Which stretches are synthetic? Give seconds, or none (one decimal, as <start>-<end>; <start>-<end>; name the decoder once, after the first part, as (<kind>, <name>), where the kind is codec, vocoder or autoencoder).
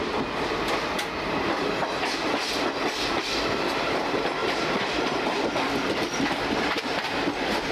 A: none